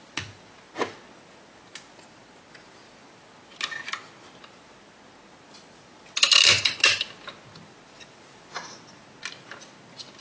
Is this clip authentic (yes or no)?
yes